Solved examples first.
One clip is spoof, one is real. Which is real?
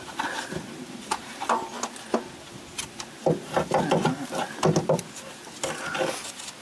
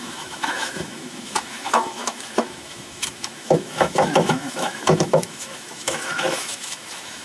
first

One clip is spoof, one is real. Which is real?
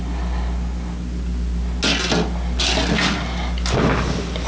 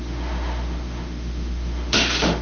first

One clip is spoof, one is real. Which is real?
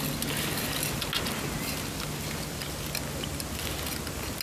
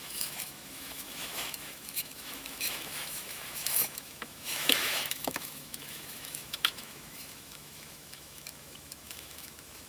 first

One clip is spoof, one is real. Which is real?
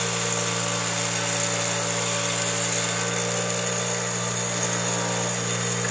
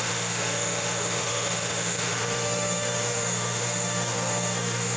first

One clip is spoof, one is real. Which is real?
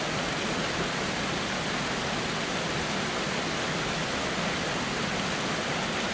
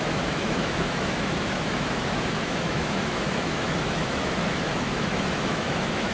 first